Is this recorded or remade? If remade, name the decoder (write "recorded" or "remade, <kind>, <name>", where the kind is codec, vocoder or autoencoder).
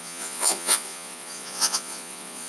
remade, vocoder, Vocos